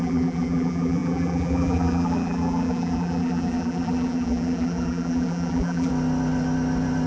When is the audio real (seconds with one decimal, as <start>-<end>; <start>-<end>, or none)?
5.9-7.1